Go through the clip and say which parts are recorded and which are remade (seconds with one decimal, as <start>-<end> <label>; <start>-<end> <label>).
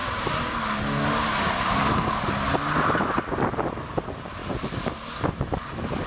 0.0-6.1 recorded